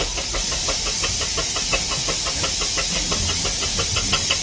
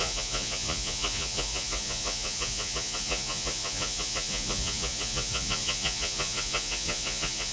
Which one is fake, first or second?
second